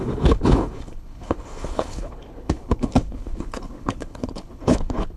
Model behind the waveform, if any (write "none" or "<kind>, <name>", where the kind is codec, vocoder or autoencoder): codec, HILCodec